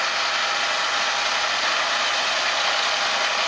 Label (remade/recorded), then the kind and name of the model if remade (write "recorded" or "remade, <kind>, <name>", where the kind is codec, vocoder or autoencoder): recorded